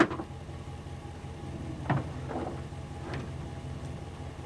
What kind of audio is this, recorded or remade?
recorded